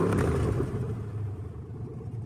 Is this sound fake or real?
real